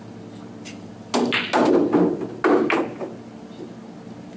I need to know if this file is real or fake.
real